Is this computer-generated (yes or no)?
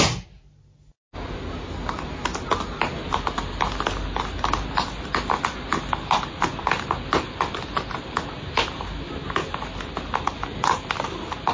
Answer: no